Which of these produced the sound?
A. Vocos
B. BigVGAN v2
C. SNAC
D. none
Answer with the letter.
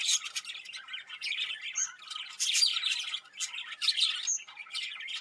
D